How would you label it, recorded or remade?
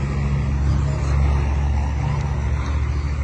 recorded